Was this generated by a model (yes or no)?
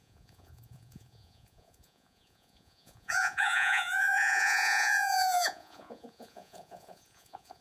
yes